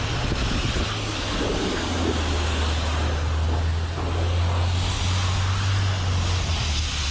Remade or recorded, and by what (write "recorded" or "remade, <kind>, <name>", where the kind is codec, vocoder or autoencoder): recorded